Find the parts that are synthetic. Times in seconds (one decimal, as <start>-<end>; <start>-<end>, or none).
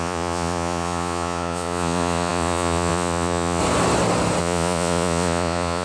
0.0-3.6; 4.4-5.8